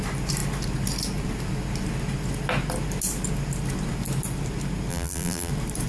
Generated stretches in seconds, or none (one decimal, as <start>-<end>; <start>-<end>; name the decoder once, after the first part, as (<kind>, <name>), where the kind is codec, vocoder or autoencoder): 4.9-5.5 (vocoder, BigVGAN v2)